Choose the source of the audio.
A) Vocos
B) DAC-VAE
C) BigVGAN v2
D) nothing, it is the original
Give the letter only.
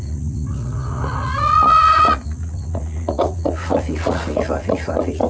A